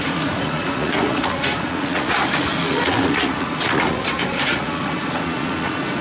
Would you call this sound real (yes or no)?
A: no